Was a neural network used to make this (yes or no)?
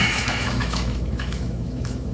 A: yes